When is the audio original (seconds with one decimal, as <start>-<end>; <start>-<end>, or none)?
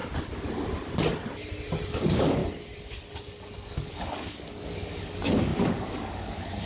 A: 0.0-1.9; 2.4-3.1